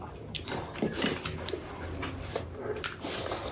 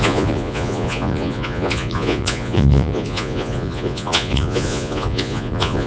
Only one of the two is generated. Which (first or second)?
second